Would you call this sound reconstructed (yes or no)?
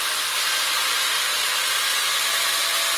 no